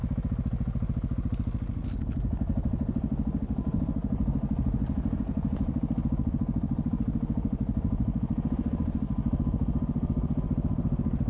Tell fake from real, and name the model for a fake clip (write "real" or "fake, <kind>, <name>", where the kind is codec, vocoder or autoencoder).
real